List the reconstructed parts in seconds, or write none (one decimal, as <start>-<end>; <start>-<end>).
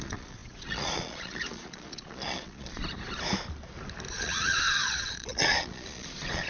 0.0-2.8; 4.1-6.5